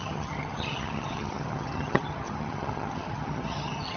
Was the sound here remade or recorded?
remade